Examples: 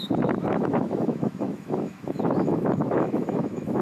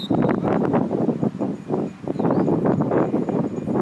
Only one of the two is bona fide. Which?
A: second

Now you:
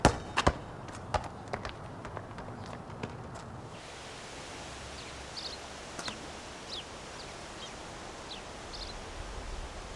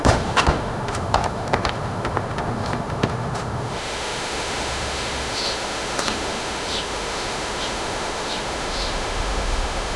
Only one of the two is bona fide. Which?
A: first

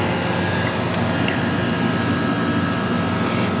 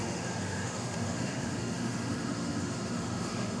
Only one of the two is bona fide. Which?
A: first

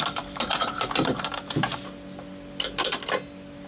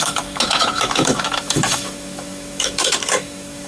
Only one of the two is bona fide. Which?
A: first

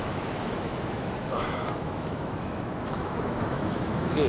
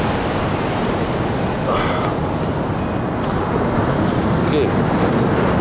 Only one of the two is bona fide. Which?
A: second